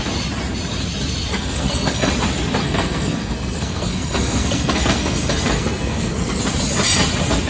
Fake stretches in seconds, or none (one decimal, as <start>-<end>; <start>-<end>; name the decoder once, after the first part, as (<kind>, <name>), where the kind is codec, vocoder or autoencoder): 1.3-2.1 (codec, SNAC); 2.6-6.4

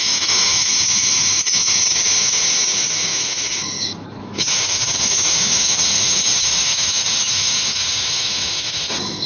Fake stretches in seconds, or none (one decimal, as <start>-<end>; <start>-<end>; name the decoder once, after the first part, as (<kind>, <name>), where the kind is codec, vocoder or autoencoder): 0.0-9.3 (autoencoder, DAC-VAE)

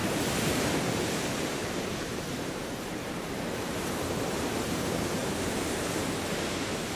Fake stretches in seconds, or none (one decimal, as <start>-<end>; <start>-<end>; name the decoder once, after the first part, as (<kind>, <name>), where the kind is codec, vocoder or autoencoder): 0.0-7.0 (vocoder, BigVGAN v2)

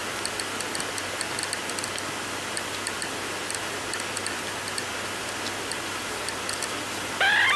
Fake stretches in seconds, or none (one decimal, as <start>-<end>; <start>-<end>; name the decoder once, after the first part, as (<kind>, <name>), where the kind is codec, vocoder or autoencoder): none

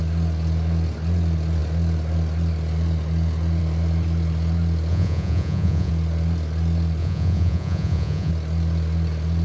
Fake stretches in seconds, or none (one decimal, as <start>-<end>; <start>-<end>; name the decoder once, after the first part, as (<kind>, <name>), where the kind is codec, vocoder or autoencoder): 4.9-5.9 (vocoder, Vocos); 7.0-8.3

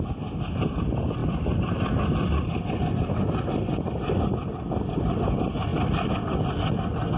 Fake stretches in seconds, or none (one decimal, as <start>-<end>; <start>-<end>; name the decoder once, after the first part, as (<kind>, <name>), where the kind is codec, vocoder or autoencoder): none

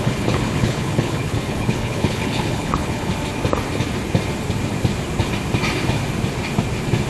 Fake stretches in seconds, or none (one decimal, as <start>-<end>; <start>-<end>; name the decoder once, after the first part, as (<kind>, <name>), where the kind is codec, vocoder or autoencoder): 0.0-3.1 (codec, HILCodec)